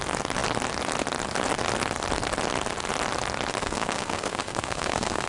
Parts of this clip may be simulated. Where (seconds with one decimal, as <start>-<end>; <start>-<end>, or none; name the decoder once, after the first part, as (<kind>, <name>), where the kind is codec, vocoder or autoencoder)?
3.6-5.3 (codec, SNAC)